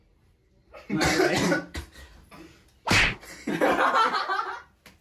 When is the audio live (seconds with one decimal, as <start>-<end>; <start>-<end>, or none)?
0.0-0.6; 2.0-5.0